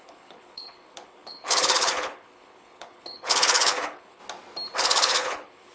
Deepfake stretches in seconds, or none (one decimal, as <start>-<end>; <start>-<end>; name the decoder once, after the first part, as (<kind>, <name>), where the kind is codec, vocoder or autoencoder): 0.0-4.2 (codec, HILCodec); 4.8-5.7